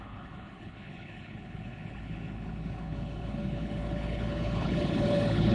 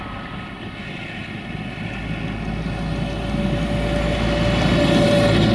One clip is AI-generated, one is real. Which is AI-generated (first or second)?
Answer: first